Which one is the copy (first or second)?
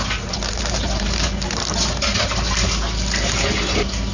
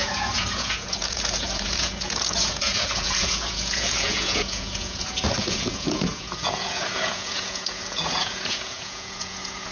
second